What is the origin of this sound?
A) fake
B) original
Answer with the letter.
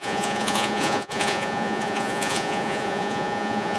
A